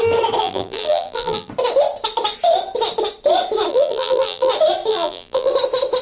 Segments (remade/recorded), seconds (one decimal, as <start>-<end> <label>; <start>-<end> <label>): 0.0-0.4 recorded; 0.4-1.5 remade; 1.5-3.7 recorded; 3.7-4.5 remade; 4.5-4.9 recorded; 4.9-5.5 remade; 5.5-6.0 recorded